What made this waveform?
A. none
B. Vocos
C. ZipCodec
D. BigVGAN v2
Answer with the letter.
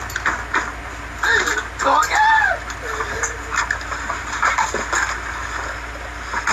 A